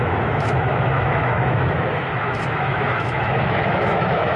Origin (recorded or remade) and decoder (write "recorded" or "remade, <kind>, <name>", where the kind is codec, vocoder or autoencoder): remade, autoencoder, DAC-VAE